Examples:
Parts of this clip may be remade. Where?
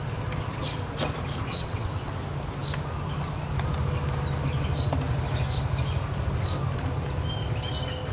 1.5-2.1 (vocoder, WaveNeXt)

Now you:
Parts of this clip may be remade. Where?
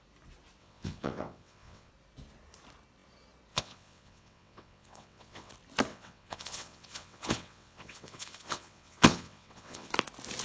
0.6-1.9 (vocoder, WaveNeXt); 3.5-5.5; 5.9-9.9